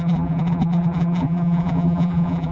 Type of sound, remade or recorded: remade